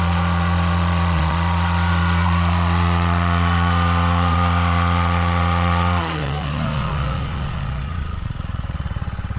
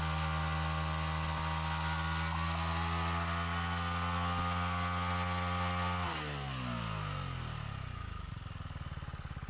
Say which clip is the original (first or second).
second